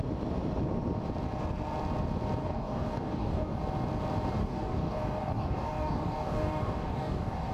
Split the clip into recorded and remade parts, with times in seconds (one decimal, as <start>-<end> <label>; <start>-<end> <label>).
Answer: 0.0-2.4 recorded; 2.4-3.6 remade; 3.6-4.4 recorded; 4.4-7.5 remade